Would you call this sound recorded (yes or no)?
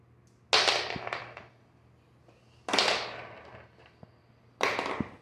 yes